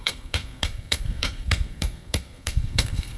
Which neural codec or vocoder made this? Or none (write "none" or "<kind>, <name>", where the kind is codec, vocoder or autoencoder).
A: codec, SNAC